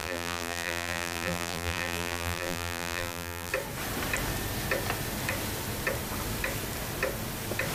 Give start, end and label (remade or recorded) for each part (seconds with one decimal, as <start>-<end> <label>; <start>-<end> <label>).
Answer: 0.0-3.5 remade; 3.5-7.7 recorded